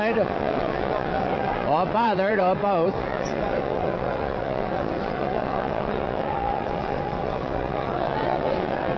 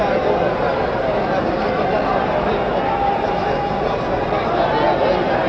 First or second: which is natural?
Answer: second